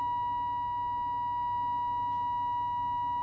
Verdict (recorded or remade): recorded